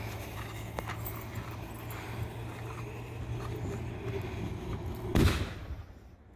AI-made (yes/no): no